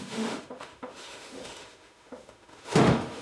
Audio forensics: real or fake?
fake